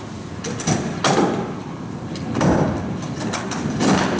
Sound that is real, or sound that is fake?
real